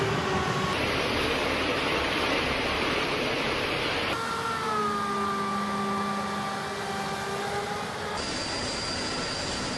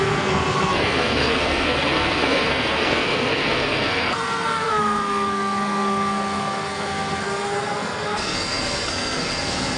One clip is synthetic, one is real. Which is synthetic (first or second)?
second